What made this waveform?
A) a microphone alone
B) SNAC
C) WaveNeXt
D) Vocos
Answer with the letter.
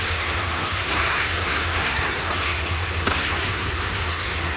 B